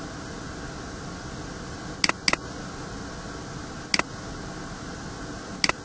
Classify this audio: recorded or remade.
recorded